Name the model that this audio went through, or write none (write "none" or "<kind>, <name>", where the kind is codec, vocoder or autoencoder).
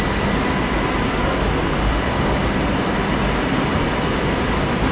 none